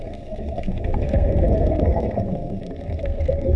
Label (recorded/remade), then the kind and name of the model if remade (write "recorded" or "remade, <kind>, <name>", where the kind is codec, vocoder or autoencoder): remade, codec, SNAC